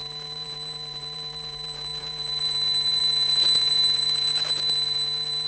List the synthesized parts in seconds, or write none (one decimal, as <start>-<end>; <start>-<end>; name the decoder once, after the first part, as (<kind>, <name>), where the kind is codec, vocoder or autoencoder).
0.0-5.5 (vocoder, Vocos)